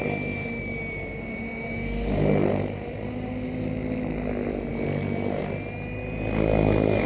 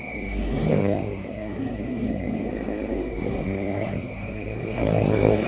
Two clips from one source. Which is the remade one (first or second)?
second